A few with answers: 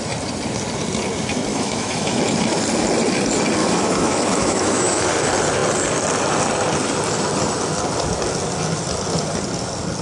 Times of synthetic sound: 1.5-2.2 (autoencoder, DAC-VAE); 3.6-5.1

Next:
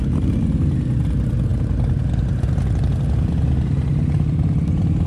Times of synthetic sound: none

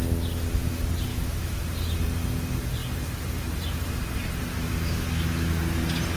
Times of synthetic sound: 1.1-1.6 (autoencoder, DAC-VAE); 4.5-5.6

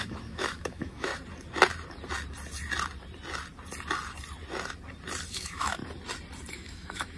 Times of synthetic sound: 0.0-1.1 (autoencoder, DAC-VAE); 5.3-5.8; 6.5-7.2

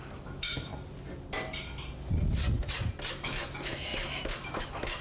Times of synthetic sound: 0.0-0.7 (autoencoder, DAC-VAE); 3.1-5.0

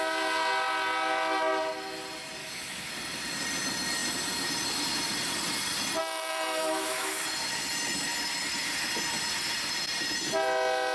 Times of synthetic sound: 2.4-2.9 (autoencoder, DAC-VAE); 6.0-7.2